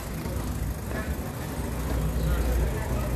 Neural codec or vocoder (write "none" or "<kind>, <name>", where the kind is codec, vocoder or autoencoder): none